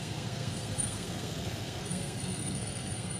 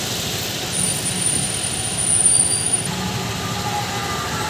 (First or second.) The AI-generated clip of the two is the first